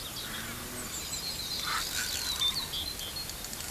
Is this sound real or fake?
real